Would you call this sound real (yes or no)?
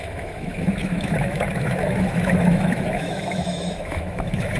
no